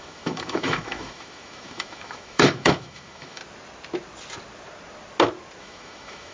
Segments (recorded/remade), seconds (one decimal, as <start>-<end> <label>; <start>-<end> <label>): 0.0-3.4 remade; 3.4-5.6 recorded; 5.6-6.3 remade